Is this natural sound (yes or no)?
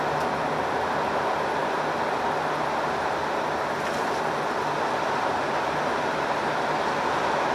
yes